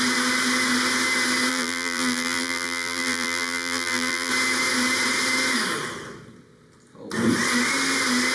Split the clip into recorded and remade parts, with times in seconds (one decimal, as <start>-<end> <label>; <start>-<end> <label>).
0.0-1.5 recorded; 1.5-4.3 remade; 4.3-8.3 recorded